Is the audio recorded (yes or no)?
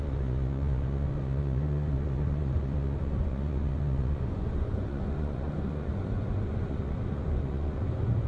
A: no